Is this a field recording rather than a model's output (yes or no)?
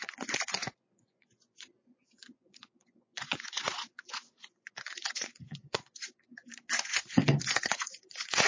no